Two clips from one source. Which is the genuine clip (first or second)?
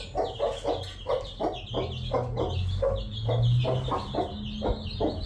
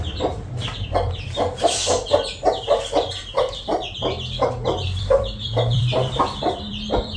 first